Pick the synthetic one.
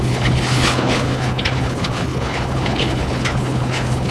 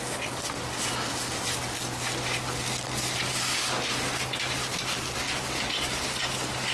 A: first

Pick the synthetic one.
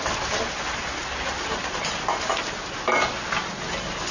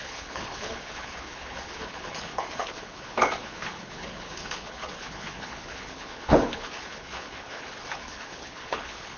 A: second